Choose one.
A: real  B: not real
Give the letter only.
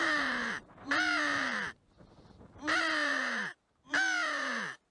B